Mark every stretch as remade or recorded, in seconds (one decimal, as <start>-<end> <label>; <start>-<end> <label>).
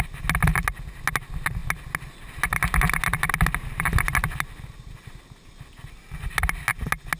0.0-7.2 recorded